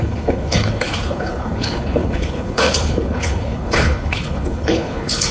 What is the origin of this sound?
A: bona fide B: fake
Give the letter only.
B